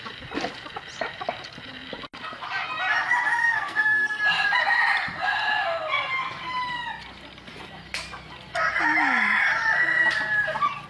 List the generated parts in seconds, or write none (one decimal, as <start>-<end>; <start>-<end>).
3.4-4.2